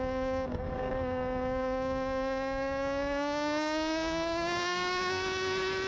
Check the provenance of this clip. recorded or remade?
remade